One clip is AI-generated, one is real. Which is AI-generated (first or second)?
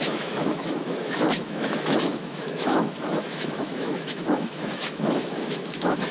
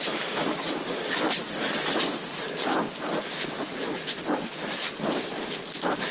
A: first